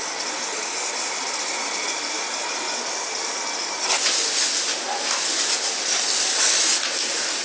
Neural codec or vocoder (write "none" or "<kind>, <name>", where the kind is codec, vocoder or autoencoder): none